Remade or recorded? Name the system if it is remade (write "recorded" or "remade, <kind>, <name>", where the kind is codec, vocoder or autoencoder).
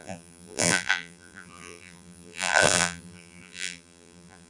remade, vocoder, BigVGAN v2